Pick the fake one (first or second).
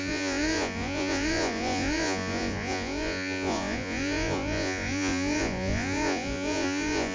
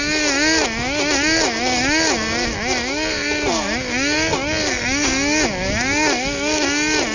first